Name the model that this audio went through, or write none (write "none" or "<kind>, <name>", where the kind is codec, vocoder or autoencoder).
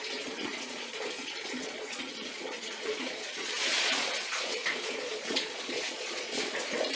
vocoder, Vocos